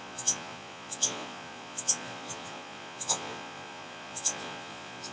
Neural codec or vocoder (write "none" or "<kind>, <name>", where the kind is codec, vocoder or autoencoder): vocoder, Vocos